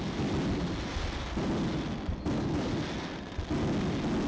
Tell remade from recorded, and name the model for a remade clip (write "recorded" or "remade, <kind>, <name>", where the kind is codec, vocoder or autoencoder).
recorded